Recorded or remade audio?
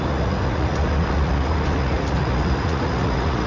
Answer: remade